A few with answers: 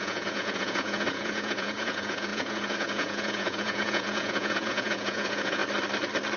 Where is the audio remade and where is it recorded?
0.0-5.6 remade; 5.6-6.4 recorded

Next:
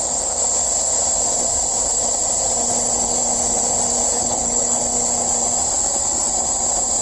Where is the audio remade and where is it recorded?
0.0-4.1 recorded; 4.1-4.8 remade; 4.8-7.0 recorded

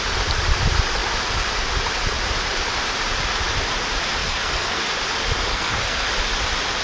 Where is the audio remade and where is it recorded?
0.0-4.2 recorded; 4.2-4.8 remade; 4.8-5.5 recorded; 5.5-6.1 remade; 6.1-6.8 recorded

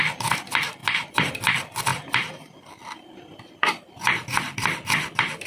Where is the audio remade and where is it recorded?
0.0-0.8 recorded; 0.8-1.3 remade; 1.3-1.9 recorded; 1.9-5.5 remade